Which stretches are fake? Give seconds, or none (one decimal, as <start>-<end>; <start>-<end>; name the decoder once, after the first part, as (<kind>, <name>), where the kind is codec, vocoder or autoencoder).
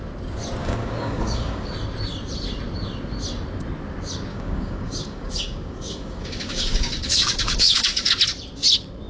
0.6-1.7 (codec, DAC); 4.3-8.2